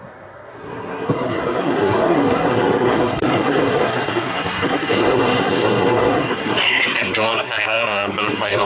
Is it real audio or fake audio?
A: fake